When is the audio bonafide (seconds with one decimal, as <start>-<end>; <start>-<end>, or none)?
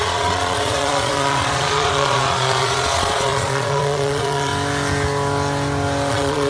4.5-6.1